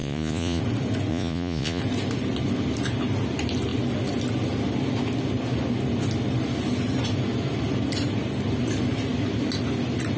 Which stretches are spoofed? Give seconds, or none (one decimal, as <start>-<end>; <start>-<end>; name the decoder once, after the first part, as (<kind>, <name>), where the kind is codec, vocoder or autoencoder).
0.0-0.6 (vocoder, Vocos); 1.1-1.8

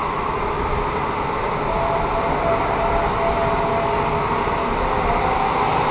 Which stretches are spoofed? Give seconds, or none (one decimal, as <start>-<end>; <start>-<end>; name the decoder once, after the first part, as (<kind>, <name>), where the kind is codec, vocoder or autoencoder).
none

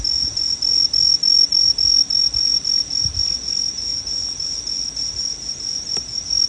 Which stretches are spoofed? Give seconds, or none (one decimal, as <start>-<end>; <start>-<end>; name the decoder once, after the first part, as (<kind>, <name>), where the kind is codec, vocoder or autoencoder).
none

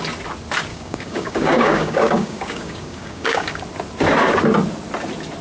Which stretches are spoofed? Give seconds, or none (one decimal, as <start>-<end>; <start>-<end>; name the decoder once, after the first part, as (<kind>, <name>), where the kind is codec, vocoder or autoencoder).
0.7-3.6 (codec, DAC)